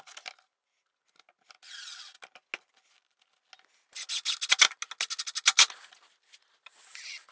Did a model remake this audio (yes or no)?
no